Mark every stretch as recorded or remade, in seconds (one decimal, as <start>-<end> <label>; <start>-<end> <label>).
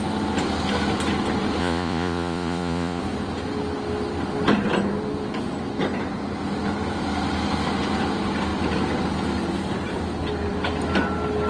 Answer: 0.0-1.6 recorded; 1.6-3.0 remade; 3.0-11.5 recorded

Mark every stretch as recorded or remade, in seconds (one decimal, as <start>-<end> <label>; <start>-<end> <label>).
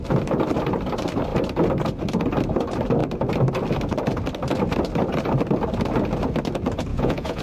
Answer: 0.0-6.9 recorded; 6.9-7.4 remade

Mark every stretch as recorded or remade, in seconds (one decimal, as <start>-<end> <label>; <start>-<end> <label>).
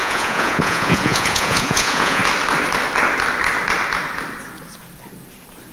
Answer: 0.0-2.2 remade; 2.2-5.7 recorded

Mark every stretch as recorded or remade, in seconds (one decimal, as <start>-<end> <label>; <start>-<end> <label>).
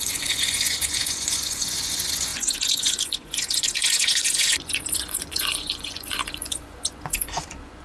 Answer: 0.0-7.8 remade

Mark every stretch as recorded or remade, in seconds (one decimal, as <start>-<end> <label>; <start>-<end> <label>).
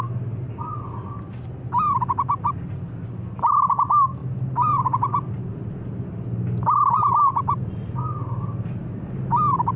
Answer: 0.0-9.8 recorded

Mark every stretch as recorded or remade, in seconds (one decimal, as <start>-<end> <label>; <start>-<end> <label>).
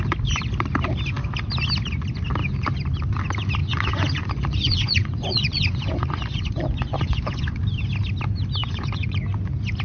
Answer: 0.0-3.6 recorded; 3.6-7.6 remade; 7.6-8.6 recorded; 8.6-9.2 remade; 9.2-9.8 recorded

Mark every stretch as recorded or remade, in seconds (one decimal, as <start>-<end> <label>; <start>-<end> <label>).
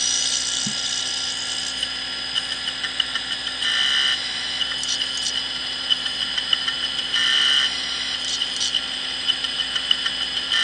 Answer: 0.0-10.6 recorded